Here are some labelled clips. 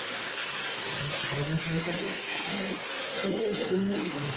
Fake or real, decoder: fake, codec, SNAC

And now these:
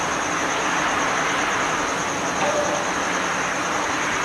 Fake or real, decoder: real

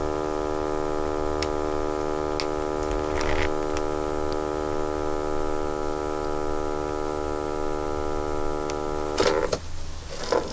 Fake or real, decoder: real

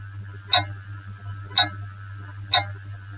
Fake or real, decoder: real